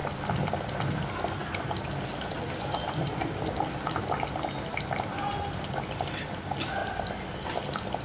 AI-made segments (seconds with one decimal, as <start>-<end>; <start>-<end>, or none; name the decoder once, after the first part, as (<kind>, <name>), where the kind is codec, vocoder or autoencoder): none